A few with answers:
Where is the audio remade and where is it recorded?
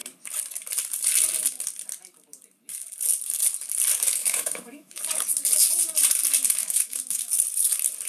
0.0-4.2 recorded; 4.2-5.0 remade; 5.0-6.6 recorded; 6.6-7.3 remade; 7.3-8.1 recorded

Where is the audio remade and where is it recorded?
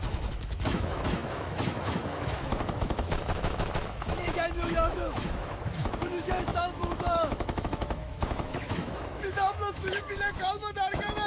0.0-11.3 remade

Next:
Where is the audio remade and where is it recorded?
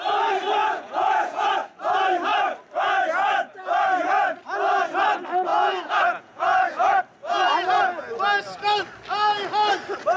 0.0-0.6 recorded; 0.6-1.5 remade; 1.5-5.5 recorded; 5.5-7.0 remade; 7.0-10.2 recorded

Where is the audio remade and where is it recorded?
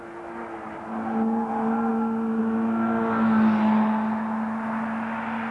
0.0-5.5 recorded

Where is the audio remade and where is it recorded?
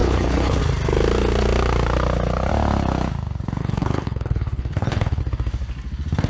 0.0-0.6 remade; 0.6-3.6 recorded; 3.6-5.2 remade; 5.2-6.3 recorded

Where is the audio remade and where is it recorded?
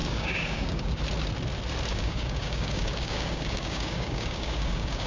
0.0-1.0 remade; 1.0-1.9 recorded; 1.9-5.1 remade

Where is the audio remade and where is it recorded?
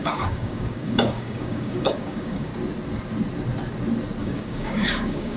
0.0-2.5 remade; 2.5-4.2 recorded; 4.2-5.4 remade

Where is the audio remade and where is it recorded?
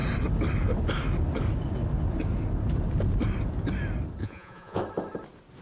0.0-4.2 recorded; 4.2-4.8 remade; 4.8-5.6 recorded